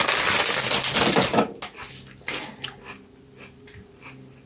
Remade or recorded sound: recorded